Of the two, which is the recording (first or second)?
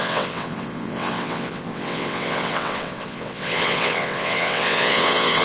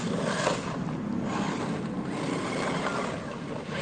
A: second